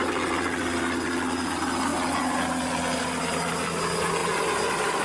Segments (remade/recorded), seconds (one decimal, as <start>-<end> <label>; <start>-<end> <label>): 0.0-5.0 recorded